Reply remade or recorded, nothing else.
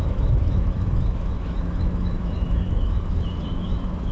remade